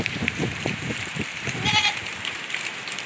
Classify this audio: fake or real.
fake